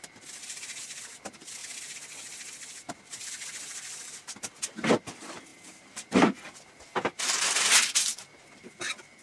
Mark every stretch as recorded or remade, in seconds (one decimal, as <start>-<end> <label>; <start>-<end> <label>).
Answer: 0.0-9.2 recorded